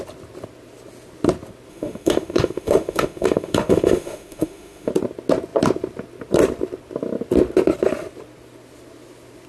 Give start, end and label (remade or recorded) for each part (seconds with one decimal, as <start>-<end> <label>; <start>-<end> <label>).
0.0-1.7 recorded; 1.7-4.9 remade; 4.9-9.5 recorded